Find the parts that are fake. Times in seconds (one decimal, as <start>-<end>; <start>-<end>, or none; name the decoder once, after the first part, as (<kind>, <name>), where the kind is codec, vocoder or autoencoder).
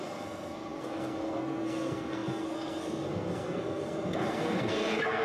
0.0-5.2 (codec, SNAC)